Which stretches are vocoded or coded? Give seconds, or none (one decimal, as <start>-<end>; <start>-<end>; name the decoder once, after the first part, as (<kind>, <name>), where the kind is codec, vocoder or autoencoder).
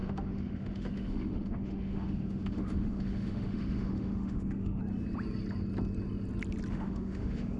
0.0-4.8 (autoencoder, DAC-VAE); 6.7-7.6